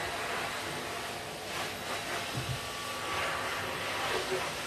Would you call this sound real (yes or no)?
yes